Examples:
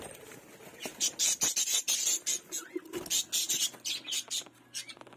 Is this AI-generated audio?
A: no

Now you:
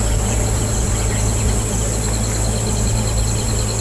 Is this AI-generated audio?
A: no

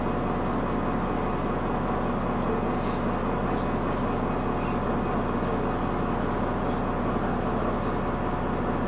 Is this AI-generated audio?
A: no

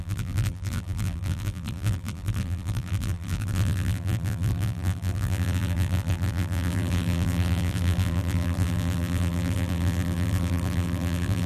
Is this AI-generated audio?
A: yes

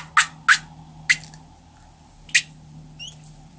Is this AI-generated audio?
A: no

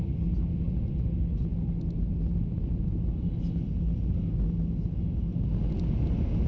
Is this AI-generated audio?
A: no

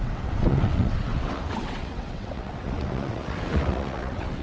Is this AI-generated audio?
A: yes